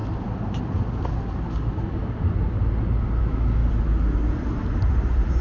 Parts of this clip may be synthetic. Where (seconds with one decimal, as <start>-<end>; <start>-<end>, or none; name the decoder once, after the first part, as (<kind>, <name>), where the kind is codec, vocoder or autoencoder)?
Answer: 3.2-3.6 (autoencoder, DAC-VAE)